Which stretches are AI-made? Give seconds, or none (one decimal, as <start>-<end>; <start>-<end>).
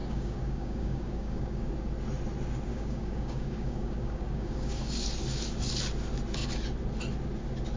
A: 0.0-1.7; 2.7-5.0